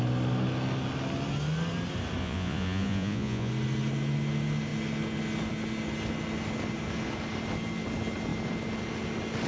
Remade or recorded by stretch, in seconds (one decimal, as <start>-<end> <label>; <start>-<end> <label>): 0.0-2.2 recorded; 2.2-3.5 remade; 3.5-9.5 recorded

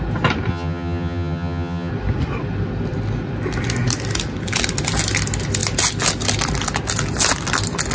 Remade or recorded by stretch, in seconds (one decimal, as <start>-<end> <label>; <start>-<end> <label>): 0.0-0.5 recorded; 0.5-1.9 remade; 1.9-7.9 recorded

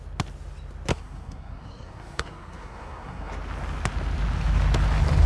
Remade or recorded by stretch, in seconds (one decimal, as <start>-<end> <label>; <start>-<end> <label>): 0.0-0.9 recorded; 0.9-3.3 remade; 3.3-5.3 recorded